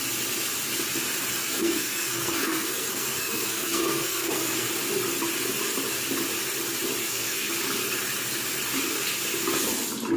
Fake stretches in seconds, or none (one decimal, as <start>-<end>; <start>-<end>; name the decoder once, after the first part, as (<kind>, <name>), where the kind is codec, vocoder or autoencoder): 1.4-4.7 (codec, SNAC); 7.0-7.5